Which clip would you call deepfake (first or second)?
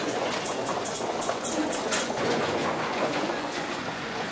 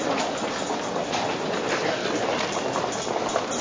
first